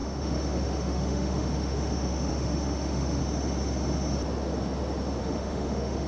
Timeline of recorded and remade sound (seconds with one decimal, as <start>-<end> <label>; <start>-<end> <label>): 0.0-3.2 remade; 3.2-5.2 recorded; 5.2-6.1 remade